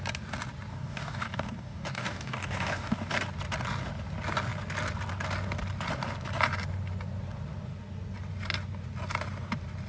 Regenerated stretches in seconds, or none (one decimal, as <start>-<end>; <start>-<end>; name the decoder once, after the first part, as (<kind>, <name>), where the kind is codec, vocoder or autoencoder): 0.7-3.1 (codec, DAC)